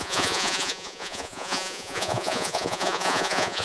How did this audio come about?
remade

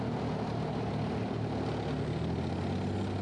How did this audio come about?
recorded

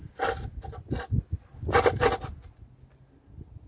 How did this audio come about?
recorded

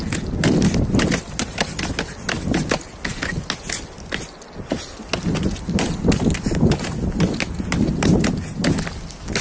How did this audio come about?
recorded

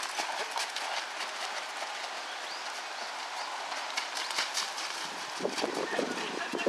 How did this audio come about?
recorded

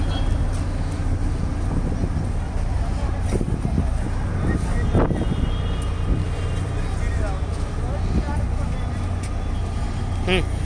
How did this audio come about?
recorded